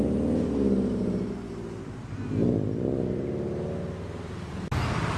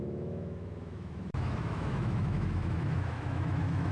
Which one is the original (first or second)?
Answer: first